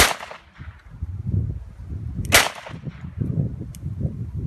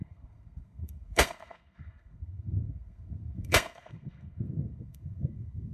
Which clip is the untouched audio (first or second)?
first